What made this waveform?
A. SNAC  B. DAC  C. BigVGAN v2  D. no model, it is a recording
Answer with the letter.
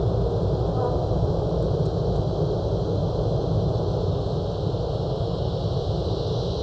D